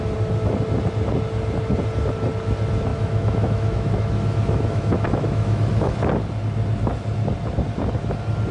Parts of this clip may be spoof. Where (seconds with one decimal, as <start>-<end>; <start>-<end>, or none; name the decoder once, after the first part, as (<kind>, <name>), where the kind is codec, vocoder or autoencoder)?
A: 2.9-6.0 (autoencoder, DAC-VAE)